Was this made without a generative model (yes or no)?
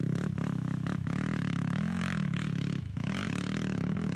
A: no